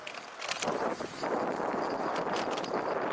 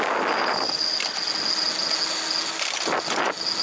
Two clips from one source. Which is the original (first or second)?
second